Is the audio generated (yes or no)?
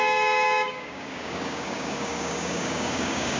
yes